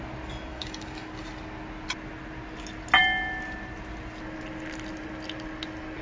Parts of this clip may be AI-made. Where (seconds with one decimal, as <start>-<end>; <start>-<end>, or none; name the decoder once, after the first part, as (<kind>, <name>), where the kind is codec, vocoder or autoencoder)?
0.5-1.1 (codec, DAC)

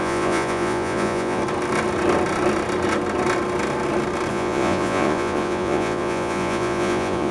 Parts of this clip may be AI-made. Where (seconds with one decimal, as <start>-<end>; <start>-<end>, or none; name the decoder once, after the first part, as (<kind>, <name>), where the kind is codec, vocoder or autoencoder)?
0.0-1.4 (vocoder, Vocos); 4.3-7.3

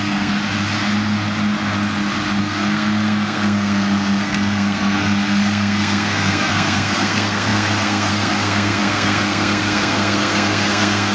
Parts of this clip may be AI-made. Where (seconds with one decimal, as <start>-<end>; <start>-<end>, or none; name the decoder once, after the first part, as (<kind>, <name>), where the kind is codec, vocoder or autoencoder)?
0.0-0.4 (codec, SNAC); 2.4-11.1

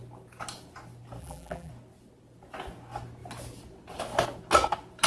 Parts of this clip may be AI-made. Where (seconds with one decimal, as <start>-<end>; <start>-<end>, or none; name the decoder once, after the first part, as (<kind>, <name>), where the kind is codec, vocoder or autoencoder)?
1.2-1.7 (vocoder, BigVGAN v2)

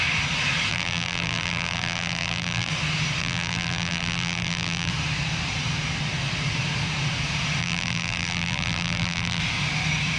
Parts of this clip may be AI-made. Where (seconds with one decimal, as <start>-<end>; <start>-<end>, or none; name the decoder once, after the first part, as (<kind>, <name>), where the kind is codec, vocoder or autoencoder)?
0.7-2.7 (vocoder, BigVGAN v2); 3.2-4.9; 7.6-9.4

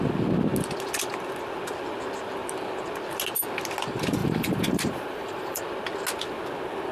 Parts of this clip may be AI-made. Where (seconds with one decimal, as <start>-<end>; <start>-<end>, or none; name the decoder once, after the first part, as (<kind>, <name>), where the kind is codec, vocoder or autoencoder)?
4.2-5.6 (vocoder, BigVGAN v2)

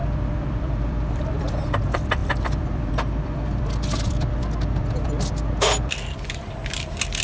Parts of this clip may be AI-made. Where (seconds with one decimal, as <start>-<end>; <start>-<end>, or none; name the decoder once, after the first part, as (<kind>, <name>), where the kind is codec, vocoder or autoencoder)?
0.0-1.5 (vocoder, BigVGAN v2); 2.2-2.9

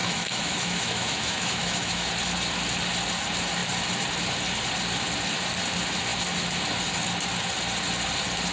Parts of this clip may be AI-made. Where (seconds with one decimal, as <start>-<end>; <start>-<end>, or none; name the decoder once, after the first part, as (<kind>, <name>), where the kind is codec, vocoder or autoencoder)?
0.0-2.1 (autoencoder, DAC-VAE)